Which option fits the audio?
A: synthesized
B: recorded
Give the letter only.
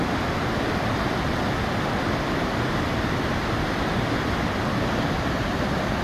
B